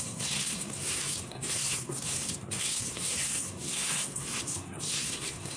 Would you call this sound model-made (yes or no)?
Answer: yes